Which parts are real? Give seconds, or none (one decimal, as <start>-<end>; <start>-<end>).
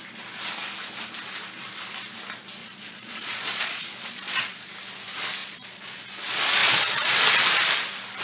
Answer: 0.0-2.6; 4.7-5.4; 6.0-6.6; 7.1-8.2